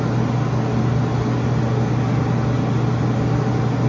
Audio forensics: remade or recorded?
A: recorded